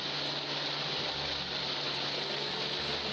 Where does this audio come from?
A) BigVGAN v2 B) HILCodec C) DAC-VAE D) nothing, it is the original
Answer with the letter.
D